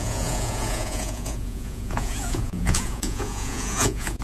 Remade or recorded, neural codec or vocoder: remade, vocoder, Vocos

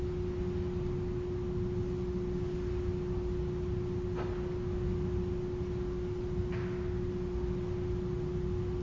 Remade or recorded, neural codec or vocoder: recorded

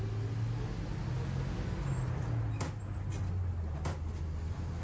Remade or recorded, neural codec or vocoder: recorded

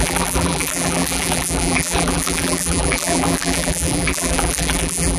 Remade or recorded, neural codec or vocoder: remade, vocoder, BigVGAN v2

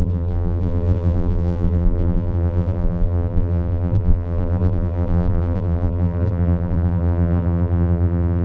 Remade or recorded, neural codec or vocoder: remade, vocoder, BigVGAN v2